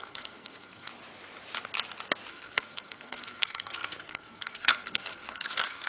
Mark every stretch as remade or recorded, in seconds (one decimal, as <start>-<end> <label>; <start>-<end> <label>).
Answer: 0.0-0.9 remade; 0.9-2.3 recorded; 2.3-5.9 remade